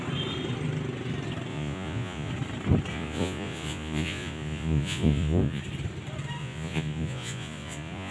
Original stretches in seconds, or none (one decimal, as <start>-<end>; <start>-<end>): 0.0-1.5; 2.3-2.9; 5.6-6.4